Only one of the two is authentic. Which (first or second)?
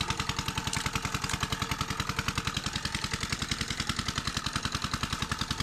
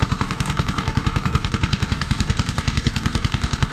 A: first